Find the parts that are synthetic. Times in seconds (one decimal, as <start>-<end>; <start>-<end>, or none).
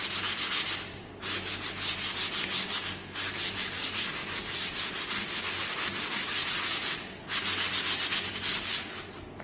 none